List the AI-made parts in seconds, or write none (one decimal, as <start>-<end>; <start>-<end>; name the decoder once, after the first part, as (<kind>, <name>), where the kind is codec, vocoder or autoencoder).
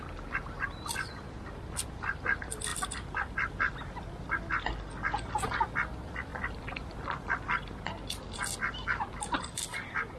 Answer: 2.7-4.4 (vocoder, BigVGAN v2); 6.3-7.4